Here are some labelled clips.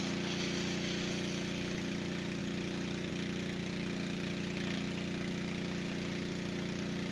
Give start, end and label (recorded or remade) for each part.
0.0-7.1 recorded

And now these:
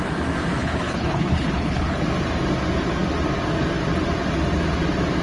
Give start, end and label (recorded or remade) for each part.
0.0-0.6 recorded; 0.6-2.0 remade; 2.0-5.2 recorded